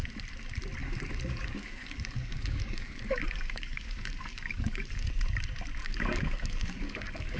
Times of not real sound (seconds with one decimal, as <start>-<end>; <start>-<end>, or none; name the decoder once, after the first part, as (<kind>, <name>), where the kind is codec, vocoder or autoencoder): 0.8-5.1 (codec, DAC); 5.8-7.4